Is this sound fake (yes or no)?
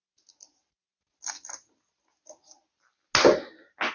no